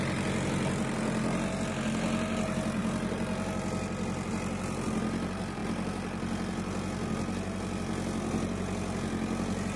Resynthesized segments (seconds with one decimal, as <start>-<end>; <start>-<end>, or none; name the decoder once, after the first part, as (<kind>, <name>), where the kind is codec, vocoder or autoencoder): none